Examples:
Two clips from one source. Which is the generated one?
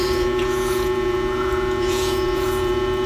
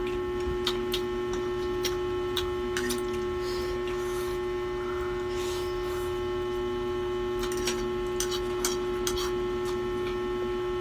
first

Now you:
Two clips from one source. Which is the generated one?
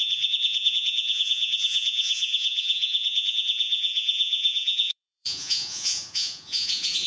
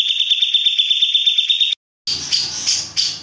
first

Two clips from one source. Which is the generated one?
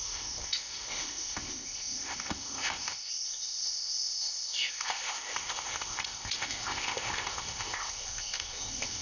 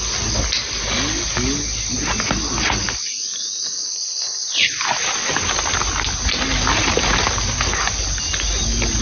first